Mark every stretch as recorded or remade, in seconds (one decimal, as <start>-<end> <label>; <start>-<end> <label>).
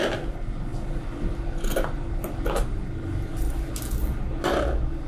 0.0-5.1 recorded